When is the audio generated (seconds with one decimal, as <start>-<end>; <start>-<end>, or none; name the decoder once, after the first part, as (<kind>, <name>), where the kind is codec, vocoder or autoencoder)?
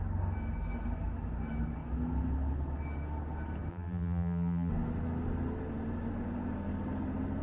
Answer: 3.7-4.7 (vocoder, BigVGAN v2)